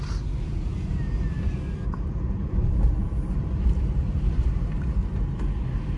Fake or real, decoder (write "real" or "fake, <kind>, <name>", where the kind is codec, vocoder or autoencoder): real